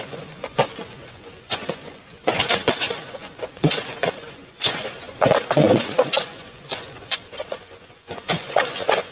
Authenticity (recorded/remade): remade